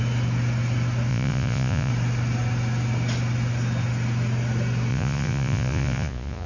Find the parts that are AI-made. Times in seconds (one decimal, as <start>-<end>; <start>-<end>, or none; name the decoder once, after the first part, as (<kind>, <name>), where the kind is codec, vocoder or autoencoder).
1.1-1.9 (vocoder, Vocos); 4.9-6.5